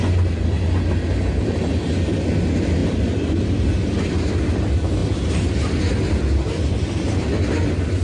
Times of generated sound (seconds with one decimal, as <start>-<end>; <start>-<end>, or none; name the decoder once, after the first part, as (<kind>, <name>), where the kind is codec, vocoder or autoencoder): 2.8-3.4 (vocoder, BigVGAN v2); 5.0-5.8